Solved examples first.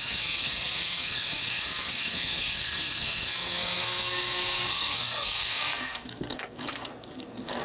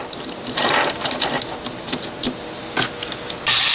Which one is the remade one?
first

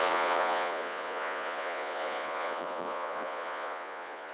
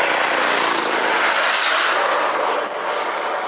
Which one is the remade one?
first